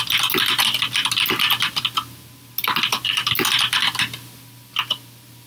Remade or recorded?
recorded